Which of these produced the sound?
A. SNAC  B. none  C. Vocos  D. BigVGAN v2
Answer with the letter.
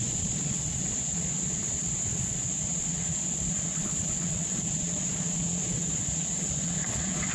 C